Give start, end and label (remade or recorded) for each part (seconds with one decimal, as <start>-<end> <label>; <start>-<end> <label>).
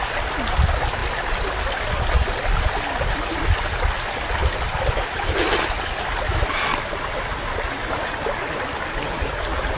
0.0-9.8 recorded